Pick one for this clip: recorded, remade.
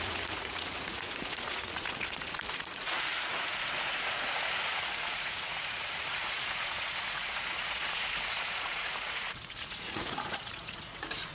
remade